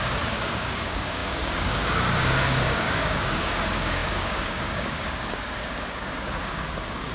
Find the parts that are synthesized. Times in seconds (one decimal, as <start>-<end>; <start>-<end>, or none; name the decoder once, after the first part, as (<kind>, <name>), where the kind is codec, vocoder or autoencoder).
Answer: 0.0-7.1 (codec, DAC)